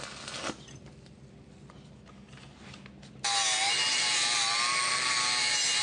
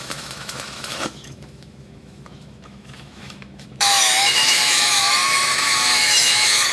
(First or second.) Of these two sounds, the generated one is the second